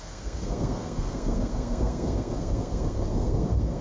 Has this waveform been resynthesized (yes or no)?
yes